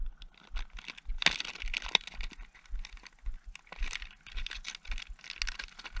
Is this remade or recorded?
recorded